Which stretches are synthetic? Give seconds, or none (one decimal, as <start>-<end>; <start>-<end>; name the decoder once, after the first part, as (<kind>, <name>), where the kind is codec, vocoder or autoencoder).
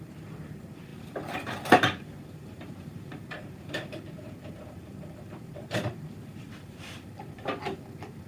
0.0-0.9 (vocoder, BigVGAN v2); 1.7-8.3